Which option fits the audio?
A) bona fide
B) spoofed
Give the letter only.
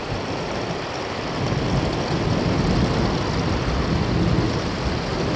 A